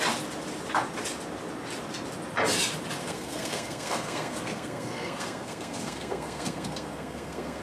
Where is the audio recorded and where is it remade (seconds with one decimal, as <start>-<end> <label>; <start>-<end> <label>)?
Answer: 0.0-3.0 recorded; 3.0-7.6 remade